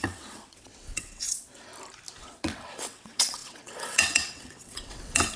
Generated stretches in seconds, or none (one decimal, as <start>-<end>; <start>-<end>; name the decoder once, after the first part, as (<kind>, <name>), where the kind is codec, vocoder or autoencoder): 0.0-1.7 (vocoder, WaveNeXt); 2.2-5.4